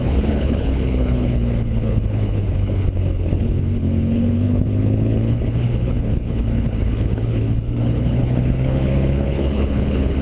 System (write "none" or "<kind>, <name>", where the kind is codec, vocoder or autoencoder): codec, HILCodec